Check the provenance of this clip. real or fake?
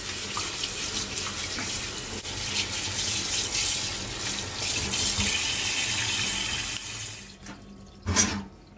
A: real